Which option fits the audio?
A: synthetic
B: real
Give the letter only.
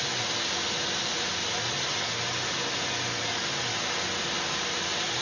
B